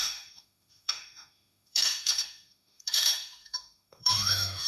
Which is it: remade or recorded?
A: remade